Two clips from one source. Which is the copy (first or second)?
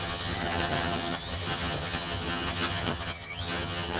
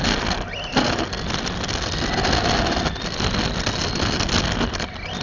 first